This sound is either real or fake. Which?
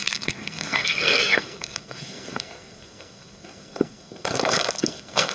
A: fake